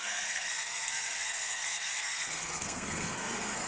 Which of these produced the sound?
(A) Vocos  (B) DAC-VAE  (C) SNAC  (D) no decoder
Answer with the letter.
C